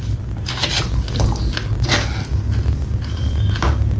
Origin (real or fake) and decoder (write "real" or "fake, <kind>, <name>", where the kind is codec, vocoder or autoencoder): real